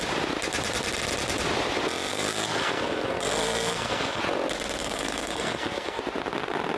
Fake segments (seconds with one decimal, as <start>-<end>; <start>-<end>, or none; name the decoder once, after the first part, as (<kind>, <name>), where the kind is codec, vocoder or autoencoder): 2.1-4.2 (codec, SNAC); 4.8-6.0